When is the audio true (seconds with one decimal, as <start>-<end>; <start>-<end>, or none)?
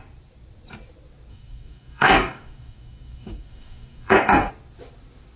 0.0-1.3; 4.5-5.4